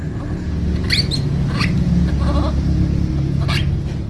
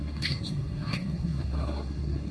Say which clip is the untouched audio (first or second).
first